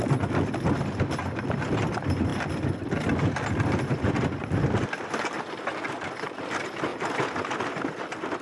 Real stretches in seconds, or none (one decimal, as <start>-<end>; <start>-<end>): 0.0-8.4